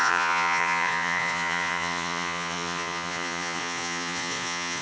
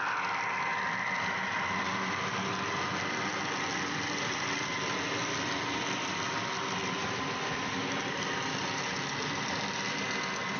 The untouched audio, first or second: second